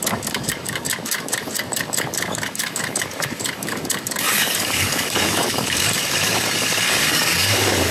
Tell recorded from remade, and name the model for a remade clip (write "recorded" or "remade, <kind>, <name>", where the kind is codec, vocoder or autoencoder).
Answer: remade, codec, DAC